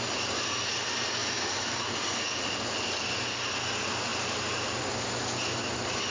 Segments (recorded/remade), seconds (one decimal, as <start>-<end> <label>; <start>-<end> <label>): 0.0-1.2 recorded; 1.2-1.9 remade; 1.9-4.1 recorded; 4.1-4.8 remade; 4.8-6.1 recorded